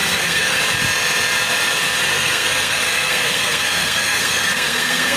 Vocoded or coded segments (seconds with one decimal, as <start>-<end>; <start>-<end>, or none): 0.0-0.6; 2.1-5.2